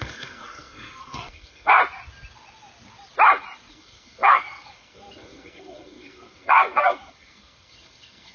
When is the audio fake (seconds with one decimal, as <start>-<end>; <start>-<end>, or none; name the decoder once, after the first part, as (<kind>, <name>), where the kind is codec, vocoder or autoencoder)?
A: 0.0-1.8 (codec, SNAC); 3.7-8.3